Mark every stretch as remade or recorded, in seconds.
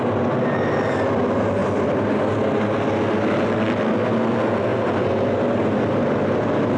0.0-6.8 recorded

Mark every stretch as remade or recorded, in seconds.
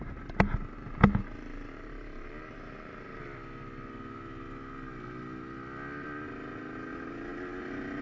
0.0-1.2 recorded; 1.2-3.2 remade; 3.2-8.0 recorded